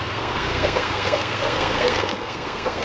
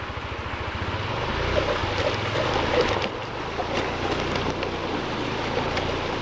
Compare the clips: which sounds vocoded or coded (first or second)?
first